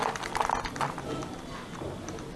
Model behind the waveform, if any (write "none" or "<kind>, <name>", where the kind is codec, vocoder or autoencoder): none